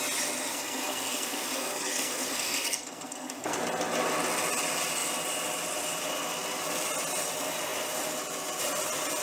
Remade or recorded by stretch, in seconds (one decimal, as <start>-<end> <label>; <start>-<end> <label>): 0.0-0.5 recorded; 0.5-3.6 remade; 3.6-9.2 recorded

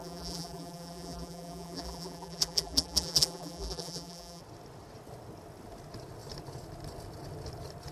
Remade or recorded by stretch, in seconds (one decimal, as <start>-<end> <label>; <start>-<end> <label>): 0.0-4.4 remade; 4.4-7.9 recorded

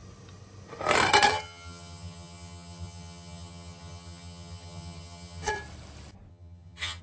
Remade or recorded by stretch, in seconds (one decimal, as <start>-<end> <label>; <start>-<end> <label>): 0.0-1.3 recorded; 1.3-5.5 remade; 5.5-6.3 recorded; 6.3-7.0 remade

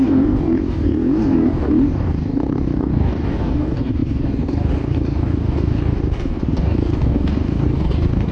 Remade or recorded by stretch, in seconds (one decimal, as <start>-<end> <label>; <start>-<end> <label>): 0.0-8.3 remade

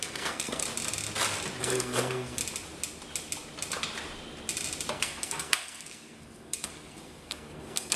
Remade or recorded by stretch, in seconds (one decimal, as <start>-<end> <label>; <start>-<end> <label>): 0.0-0.6 remade; 0.6-1.6 recorded; 1.6-2.4 remade; 2.4-4.9 recorded; 4.9-8.0 remade

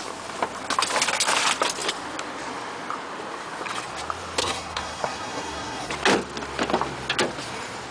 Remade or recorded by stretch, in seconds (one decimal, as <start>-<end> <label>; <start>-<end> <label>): 0.0-4.4 recorded; 4.4-5.9 remade; 5.9-7.9 recorded

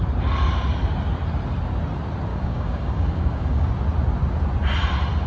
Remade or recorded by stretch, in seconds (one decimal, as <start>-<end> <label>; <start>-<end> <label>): 0.0-2.3 recorded; 2.3-3.7 remade; 3.7-5.3 recorded

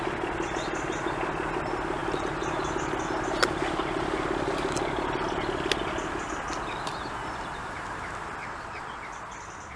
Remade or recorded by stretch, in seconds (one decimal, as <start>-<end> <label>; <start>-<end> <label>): 0.0-8.4 recorded; 8.4-9.0 remade; 9.0-9.8 recorded